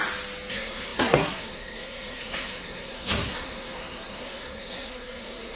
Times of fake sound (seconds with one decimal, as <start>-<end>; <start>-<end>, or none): 0.5-5.6